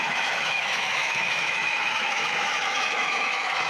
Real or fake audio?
fake